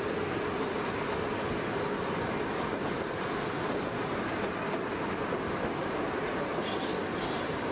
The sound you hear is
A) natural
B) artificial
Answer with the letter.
A